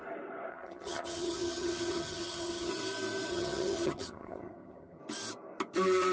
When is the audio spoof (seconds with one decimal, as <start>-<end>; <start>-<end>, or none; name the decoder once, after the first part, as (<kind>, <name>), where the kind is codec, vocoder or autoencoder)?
0.5-2.7 (vocoder, HiFi-GAN); 3.3-5.0